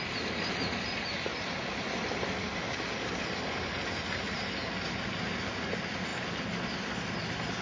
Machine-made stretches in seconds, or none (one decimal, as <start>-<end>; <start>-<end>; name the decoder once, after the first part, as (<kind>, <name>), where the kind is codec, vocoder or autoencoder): none